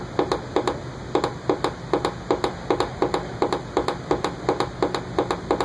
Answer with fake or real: real